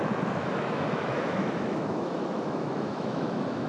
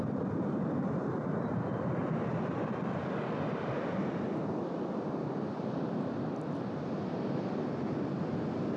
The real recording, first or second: second